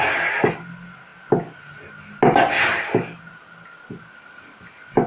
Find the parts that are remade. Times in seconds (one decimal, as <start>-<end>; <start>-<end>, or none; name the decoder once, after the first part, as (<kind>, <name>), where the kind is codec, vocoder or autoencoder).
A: none